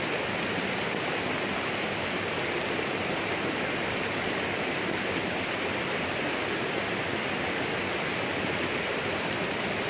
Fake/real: real